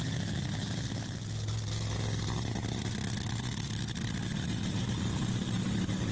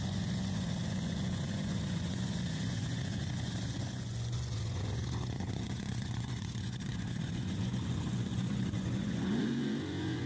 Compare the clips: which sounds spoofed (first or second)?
second